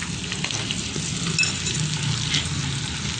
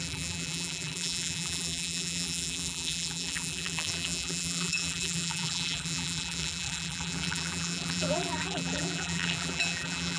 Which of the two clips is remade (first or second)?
second